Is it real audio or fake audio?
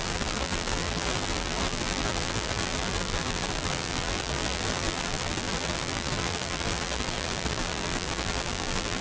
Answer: fake